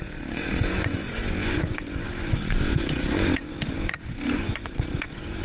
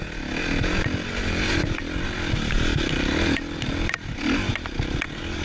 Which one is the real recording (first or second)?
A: second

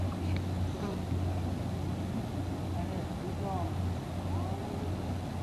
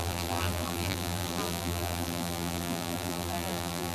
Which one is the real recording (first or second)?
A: first